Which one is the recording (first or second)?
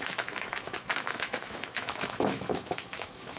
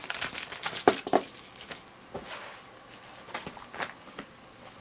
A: second